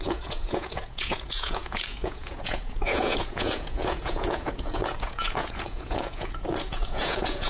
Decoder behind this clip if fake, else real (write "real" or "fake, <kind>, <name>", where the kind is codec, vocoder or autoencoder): fake, vocoder, Vocos